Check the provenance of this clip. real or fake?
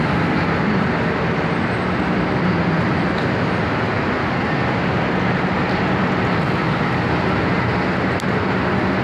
real